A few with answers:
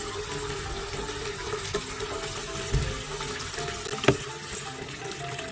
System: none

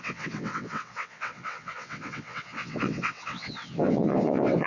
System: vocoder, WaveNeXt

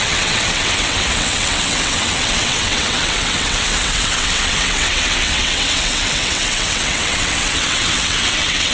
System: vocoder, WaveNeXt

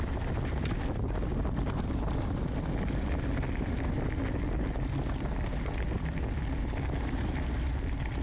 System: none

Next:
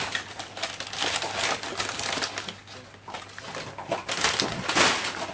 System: none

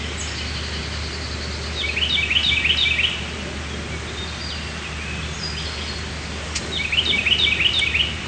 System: none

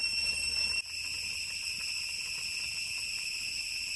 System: none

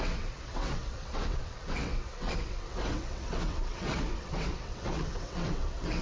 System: vocoder, WaveNeXt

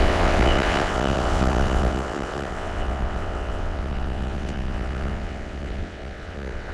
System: vocoder, WaveNeXt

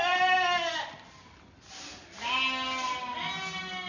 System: none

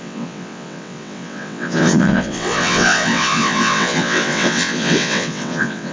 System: vocoder, WaveNeXt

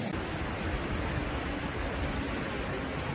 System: none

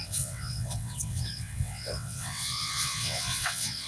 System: vocoder, WaveNeXt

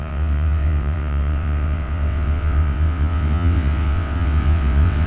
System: vocoder, WaveNeXt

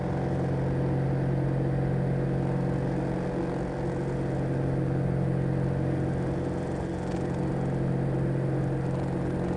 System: none